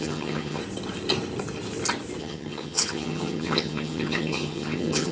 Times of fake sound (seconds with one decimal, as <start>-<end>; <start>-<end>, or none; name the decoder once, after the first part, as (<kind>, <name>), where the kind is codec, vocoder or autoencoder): 0.0-0.6 (vocoder, HiFi-GAN); 2.2-5.1